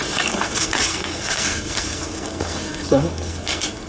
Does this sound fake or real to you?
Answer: fake